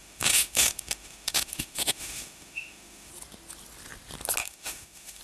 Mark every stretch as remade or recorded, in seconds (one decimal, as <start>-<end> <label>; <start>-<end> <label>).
0.0-3.1 remade; 3.1-4.4 recorded; 4.4-5.2 remade